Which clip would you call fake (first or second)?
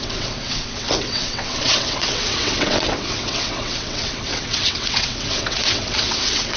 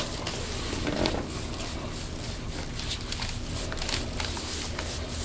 first